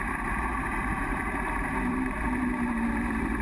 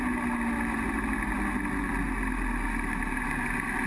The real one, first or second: second